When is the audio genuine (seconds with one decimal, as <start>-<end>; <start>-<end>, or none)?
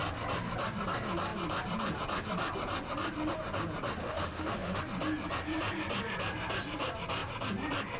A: 0.0-4.0; 4.8-8.0